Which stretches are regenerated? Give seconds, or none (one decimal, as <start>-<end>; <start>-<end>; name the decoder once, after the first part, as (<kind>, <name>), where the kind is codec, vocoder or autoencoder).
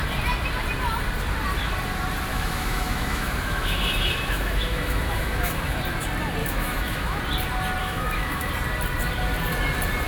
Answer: 2.3-5.8 (autoencoder, DAC-VAE); 6.4-7.2; 7.8-8.5